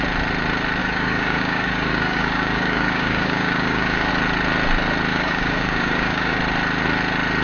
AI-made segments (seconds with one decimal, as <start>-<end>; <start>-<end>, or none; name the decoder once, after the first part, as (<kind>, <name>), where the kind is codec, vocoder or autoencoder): 0.8-4.1 (codec, DAC); 5.1-6.4